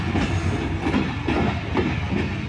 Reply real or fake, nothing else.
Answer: real